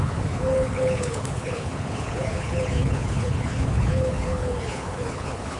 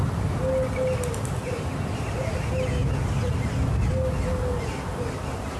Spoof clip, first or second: first